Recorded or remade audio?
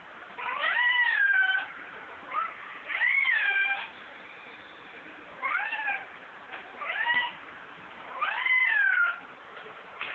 remade